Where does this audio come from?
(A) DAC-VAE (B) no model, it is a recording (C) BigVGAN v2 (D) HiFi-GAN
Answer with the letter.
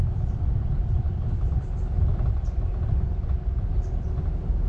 B